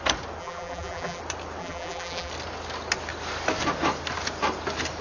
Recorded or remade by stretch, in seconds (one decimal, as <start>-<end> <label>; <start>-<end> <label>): 0.0-0.4 recorded; 0.4-1.2 remade; 1.2-1.6 recorded; 1.6-2.3 remade; 2.3-5.0 recorded